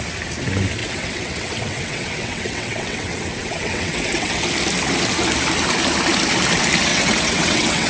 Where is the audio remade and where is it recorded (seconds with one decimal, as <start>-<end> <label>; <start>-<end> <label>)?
0.0-0.8 recorded; 0.8-4.4 remade; 4.4-6.9 recorded; 6.9-7.9 remade